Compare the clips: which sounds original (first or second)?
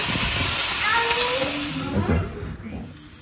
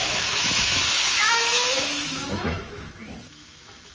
first